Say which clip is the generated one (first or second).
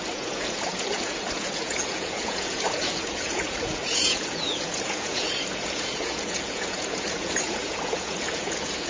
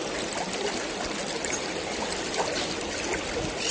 first